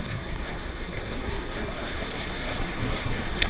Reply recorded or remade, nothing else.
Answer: remade